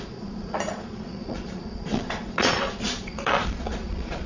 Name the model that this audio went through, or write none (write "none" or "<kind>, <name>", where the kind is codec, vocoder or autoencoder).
vocoder, Vocos